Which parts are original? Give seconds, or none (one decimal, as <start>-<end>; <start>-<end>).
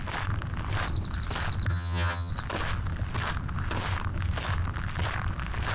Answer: 0.0-1.7; 2.3-5.7